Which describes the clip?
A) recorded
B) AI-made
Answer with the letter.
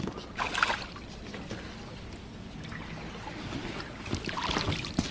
A